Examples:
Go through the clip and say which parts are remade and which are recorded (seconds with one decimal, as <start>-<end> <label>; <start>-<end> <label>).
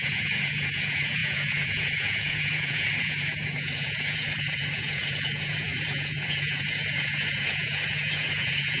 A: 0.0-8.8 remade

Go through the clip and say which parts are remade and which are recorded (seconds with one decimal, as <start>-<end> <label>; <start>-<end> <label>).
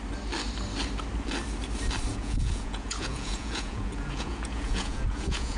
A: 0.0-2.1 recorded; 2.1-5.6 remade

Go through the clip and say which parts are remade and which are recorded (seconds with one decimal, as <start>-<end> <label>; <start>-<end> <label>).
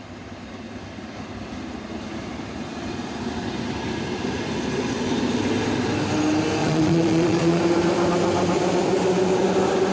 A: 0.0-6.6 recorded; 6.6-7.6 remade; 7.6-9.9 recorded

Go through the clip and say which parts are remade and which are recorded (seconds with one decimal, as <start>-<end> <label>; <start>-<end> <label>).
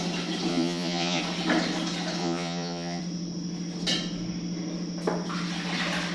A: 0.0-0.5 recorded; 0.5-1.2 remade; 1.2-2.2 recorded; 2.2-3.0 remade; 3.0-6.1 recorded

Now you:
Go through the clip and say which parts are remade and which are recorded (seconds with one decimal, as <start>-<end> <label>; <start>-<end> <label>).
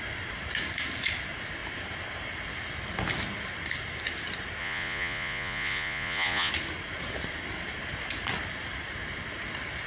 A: 0.0-4.6 recorded; 4.6-6.5 remade; 6.5-9.9 recorded